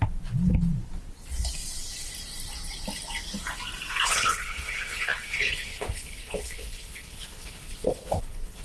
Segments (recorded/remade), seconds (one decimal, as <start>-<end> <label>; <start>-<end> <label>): 0.0-3.9 recorded; 3.9-8.6 remade